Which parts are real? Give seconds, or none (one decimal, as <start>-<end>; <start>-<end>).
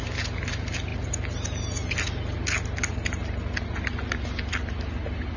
0.0-5.4